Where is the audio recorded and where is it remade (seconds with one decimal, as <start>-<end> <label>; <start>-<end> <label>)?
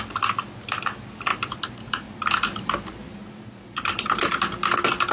0.0-1.3 recorded; 1.3-4.4 remade; 4.4-5.1 recorded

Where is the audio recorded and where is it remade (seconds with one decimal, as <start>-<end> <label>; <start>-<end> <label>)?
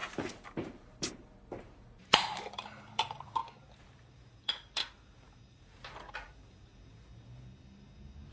0.0-6.7 remade; 6.7-8.3 recorded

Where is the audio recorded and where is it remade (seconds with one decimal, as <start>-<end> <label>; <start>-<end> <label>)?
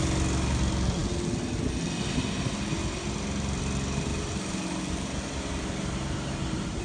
0.0-4.1 recorded; 4.1-6.8 remade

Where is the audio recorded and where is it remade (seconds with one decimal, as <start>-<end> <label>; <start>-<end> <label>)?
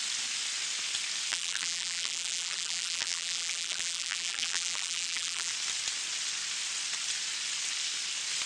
0.0-1.3 recorded; 1.3-5.5 remade; 5.5-8.4 recorded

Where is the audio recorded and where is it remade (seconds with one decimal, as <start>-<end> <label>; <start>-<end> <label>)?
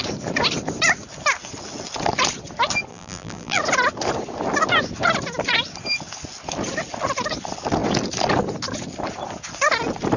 0.0-2.9 recorded; 2.9-3.6 remade; 3.6-10.2 recorded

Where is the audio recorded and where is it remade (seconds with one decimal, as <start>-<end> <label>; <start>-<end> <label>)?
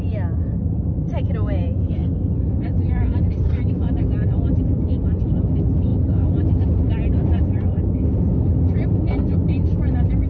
0.0-10.3 recorded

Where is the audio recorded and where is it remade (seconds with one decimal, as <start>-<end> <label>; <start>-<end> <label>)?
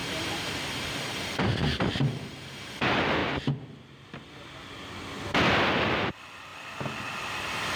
0.0-2.7 remade; 2.7-7.8 recorded